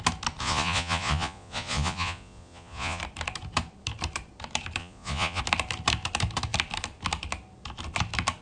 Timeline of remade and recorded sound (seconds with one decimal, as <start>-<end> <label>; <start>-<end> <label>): 0.0-0.4 recorded; 0.4-3.0 remade; 3.0-4.8 recorded; 4.8-5.4 remade; 5.4-8.4 recorded